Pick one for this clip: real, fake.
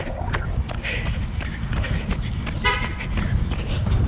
real